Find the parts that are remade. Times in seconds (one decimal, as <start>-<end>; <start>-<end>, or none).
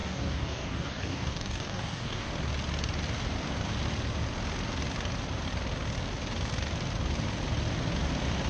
0.0-2.3